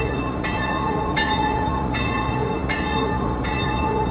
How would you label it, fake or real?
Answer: fake